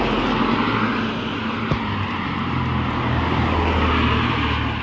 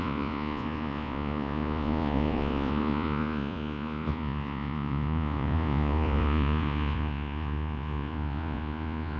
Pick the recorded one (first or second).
first